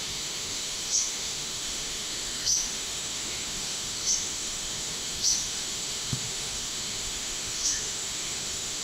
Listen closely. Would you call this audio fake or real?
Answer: fake